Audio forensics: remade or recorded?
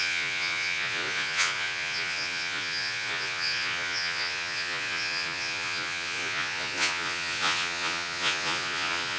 remade